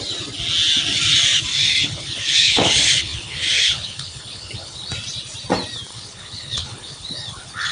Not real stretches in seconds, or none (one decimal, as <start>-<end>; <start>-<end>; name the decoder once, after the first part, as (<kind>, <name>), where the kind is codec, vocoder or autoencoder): 1.5-4.9 (codec, HILCodec); 5.9-7.7